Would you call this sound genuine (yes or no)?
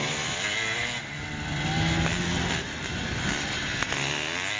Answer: yes